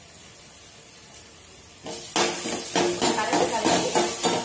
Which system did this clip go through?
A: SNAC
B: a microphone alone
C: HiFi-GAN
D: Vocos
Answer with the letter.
B